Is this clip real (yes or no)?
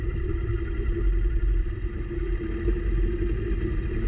yes